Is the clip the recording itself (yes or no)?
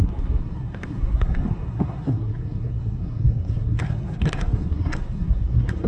no